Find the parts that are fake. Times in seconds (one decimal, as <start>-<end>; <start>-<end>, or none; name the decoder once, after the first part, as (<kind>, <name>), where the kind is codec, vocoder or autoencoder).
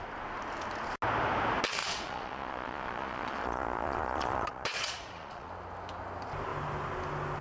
1.8-5.5 (vocoder, Vocos)